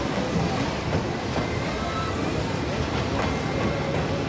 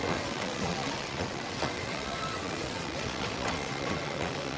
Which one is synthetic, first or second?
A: second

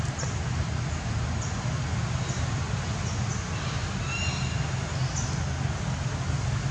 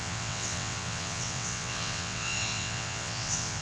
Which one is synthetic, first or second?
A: second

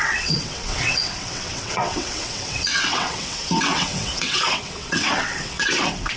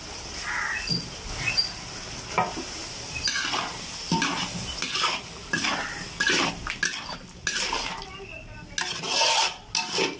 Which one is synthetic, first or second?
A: first